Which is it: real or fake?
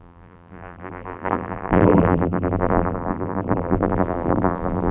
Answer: fake